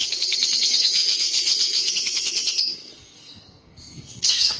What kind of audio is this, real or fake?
fake